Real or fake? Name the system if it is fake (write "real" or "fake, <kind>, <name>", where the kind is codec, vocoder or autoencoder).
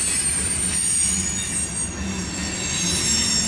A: real